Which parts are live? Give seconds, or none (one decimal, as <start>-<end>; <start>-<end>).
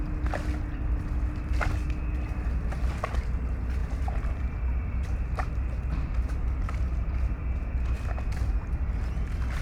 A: 0.0-3.8; 5.5-9.6